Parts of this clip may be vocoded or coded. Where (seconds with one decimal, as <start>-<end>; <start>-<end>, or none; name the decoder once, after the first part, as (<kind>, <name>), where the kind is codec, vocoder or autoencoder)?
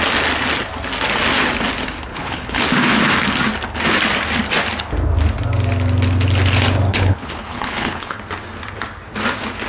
2.1-2.6 (codec, HILCodec); 6.9-8.2